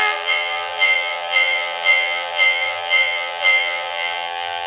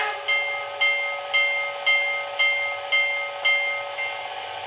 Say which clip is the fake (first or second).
first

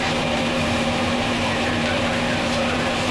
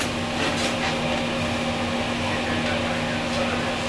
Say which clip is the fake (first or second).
first